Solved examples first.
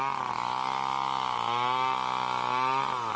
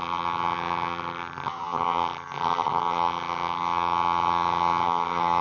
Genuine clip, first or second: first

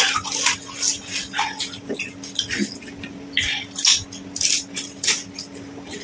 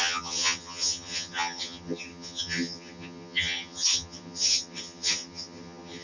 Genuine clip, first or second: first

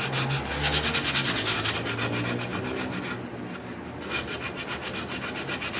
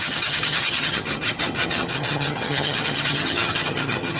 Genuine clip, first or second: first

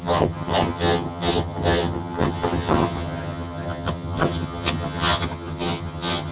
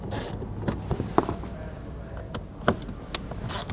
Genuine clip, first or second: second